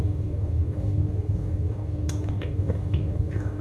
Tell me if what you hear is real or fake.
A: fake